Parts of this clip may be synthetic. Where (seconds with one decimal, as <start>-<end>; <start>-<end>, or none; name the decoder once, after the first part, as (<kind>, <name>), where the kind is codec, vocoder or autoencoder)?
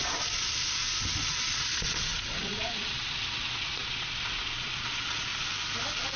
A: 0.0-0.8 (vocoder, Vocos); 1.3-5.3